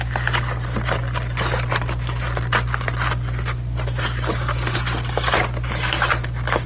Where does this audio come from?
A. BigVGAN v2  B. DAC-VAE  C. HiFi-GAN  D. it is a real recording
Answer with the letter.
D